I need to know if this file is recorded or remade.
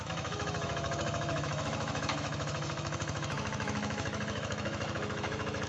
remade